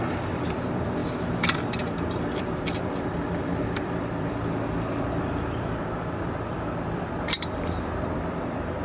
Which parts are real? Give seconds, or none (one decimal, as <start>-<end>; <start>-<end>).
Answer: none